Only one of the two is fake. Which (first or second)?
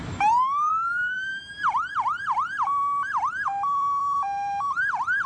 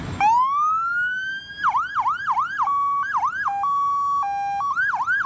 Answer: first